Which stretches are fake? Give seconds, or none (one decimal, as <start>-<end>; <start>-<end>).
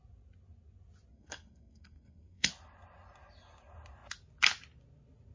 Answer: 1.1-2.5